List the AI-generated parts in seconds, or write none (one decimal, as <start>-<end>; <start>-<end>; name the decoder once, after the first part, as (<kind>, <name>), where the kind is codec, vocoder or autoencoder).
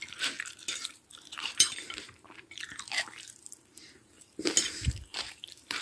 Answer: 0.8-4.3 (vocoder, BigVGAN v2); 5.1-5.8